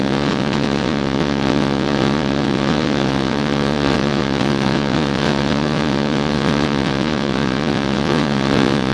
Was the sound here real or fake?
fake